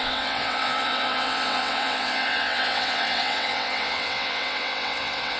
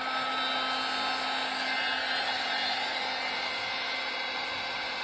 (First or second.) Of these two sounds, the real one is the second